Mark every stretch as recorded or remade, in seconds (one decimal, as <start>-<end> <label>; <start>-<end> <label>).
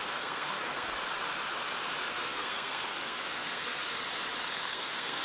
0.0-0.9 remade; 0.9-2.1 recorded; 2.1-3.9 remade; 3.9-4.5 recorded; 4.5-5.2 remade